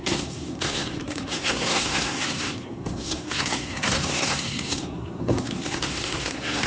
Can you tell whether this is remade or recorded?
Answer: remade